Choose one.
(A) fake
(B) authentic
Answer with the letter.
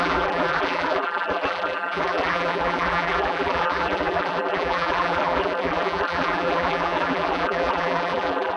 A